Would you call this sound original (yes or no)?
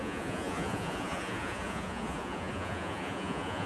no